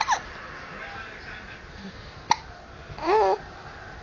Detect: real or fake real